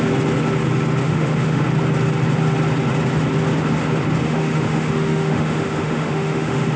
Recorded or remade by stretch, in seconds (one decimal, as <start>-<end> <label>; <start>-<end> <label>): 0.0-1.0 recorded; 1.0-1.7 remade; 1.7-4.2 recorded; 4.2-6.8 remade